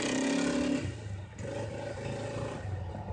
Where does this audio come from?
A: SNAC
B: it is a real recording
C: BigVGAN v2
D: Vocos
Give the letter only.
B